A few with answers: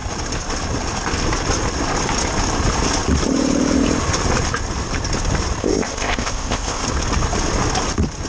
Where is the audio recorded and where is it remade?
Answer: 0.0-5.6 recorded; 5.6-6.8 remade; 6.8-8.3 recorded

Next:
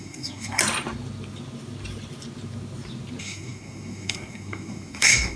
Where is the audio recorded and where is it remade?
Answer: 0.0-0.6 remade; 0.6-3.2 recorded; 3.2-5.4 remade

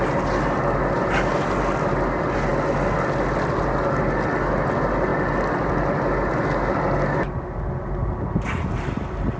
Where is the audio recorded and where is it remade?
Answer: 0.0-9.4 recorded